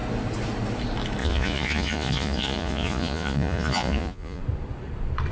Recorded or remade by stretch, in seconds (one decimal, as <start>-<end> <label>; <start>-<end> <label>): 0.0-1.2 recorded; 1.2-4.4 remade; 4.4-5.3 recorded